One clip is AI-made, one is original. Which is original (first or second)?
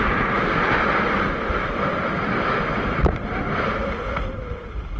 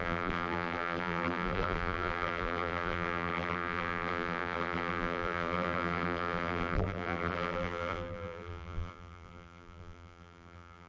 first